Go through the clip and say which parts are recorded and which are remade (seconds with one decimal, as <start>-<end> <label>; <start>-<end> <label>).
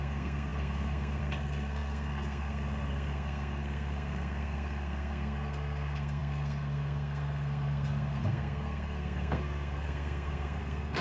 0.0-11.0 remade